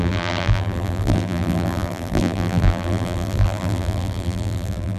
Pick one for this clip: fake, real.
fake